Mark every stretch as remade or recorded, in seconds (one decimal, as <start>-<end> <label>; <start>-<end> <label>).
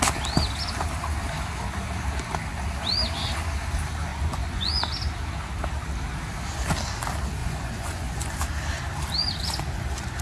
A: 0.0-4.1 recorded; 4.1-4.7 remade; 4.7-7.4 recorded; 7.4-8.4 remade; 8.4-10.2 recorded